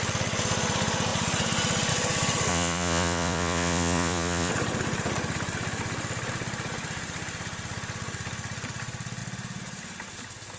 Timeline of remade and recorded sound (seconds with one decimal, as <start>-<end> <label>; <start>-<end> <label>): 0.0-2.5 recorded; 2.5-4.5 remade; 4.5-10.6 recorded